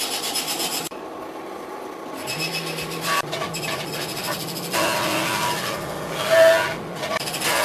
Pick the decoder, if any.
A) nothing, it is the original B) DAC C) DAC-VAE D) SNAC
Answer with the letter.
A